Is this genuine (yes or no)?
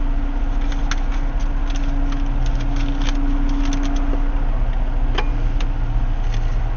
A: yes